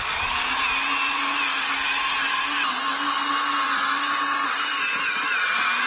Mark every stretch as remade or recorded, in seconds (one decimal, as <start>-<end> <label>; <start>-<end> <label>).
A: 0.0-5.9 recorded

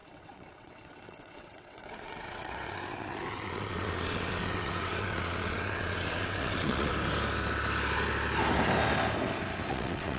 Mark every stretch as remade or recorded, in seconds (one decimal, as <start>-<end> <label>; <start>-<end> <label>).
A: 0.0-6.9 remade; 6.9-9.7 recorded; 9.7-10.2 remade